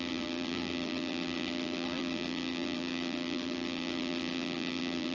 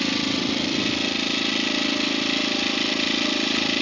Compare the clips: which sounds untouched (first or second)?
second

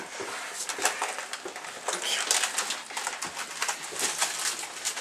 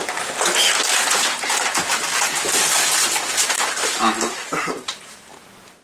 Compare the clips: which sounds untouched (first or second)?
first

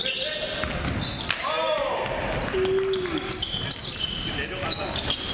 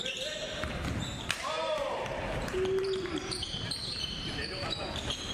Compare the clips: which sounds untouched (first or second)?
first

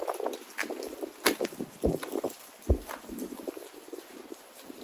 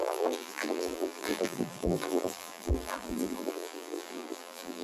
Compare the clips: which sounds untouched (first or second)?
first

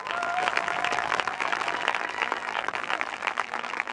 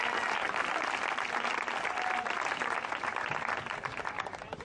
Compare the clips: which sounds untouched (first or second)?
second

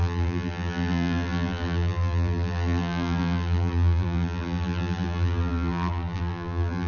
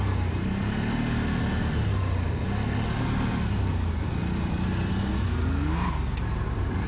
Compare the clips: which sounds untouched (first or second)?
second